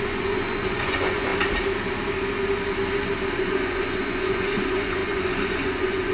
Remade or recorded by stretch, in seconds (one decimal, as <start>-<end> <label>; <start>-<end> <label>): 0.0-1.3 remade; 1.3-3.4 recorded; 3.4-6.1 remade